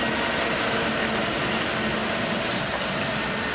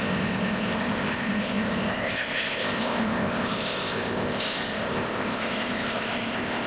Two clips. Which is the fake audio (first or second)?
second